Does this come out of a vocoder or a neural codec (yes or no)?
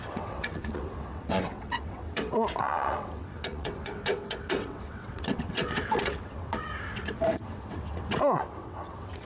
yes